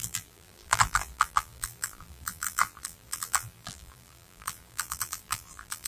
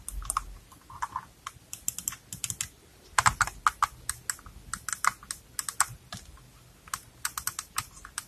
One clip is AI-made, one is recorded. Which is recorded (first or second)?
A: second